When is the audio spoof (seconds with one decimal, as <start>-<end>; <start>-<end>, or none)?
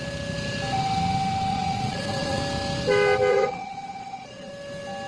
1.5-2.4; 3.3-4.5